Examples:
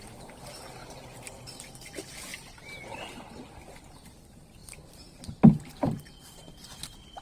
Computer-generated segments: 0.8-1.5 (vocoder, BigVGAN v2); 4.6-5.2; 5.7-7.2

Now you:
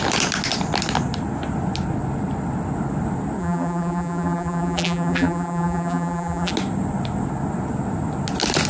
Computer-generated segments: 3.4-6.5 (vocoder, BigVGAN v2)

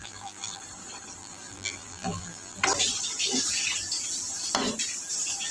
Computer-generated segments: 0.0-0.6 (vocoder, BigVGAN v2); 1.2-2.6

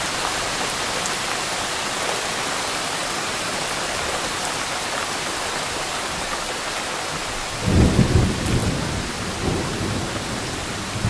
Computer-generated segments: 3.0-3.6 (vocoder, BigVGAN v2); 8.6-10.2

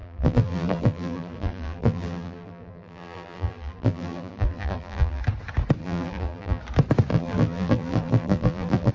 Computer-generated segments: 0.0-5.2 (vocoder, BigVGAN v2); 5.8-6.6; 7.1-8.9